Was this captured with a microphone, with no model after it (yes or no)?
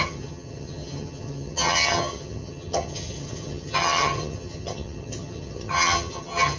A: no